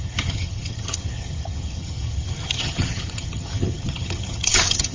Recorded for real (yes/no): no